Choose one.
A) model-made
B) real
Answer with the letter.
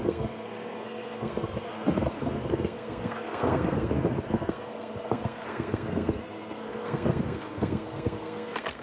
A